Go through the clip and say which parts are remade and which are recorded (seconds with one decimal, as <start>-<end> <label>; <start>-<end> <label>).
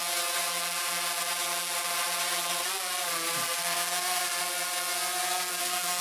0.0-3.6 recorded; 3.6-4.4 remade; 4.4-5.6 recorded; 5.6-6.0 remade